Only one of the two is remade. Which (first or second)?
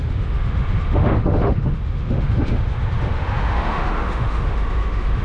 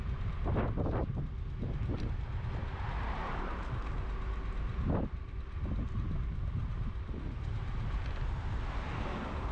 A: first